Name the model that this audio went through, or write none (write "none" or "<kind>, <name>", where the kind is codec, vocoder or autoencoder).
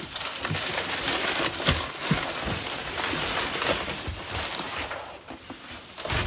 vocoder, BigVGAN v2